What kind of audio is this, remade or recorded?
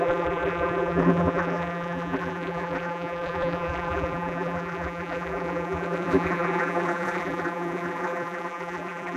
remade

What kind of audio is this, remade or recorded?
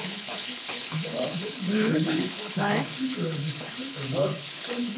remade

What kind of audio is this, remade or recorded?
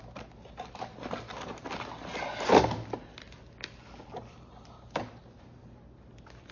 recorded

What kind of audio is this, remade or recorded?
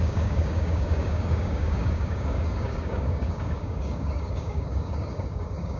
remade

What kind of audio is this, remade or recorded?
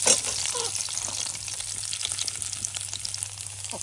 recorded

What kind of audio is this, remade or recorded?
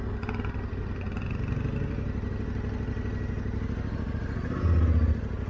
recorded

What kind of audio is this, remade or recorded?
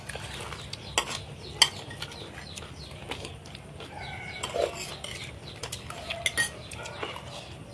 recorded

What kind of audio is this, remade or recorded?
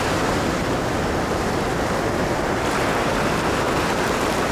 recorded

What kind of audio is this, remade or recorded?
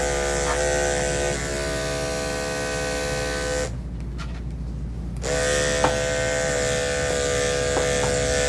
recorded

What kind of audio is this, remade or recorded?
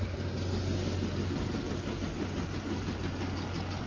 recorded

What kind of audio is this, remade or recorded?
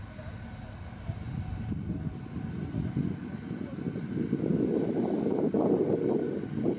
recorded